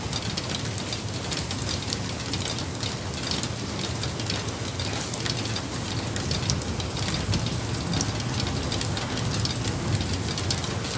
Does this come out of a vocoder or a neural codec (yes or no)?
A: no